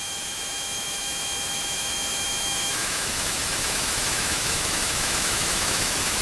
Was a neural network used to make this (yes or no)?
yes